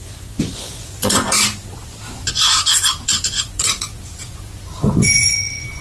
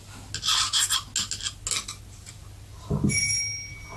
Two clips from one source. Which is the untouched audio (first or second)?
second